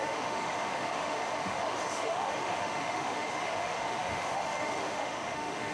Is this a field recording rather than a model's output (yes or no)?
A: no